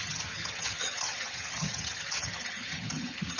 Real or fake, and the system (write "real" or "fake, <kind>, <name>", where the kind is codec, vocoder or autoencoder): fake, vocoder, HiFi-GAN